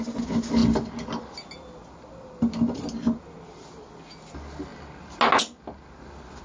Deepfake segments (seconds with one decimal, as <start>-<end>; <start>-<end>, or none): none